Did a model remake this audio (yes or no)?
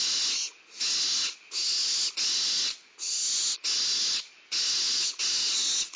no